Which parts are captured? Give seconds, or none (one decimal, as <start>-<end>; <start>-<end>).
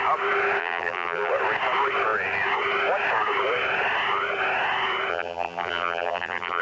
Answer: 0.0-0.6; 1.3-5.1